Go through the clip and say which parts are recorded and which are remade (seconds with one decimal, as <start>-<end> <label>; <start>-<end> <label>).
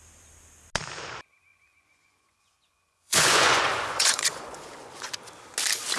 0.0-1.5 recorded; 1.5-5.1 remade; 5.1-6.0 recorded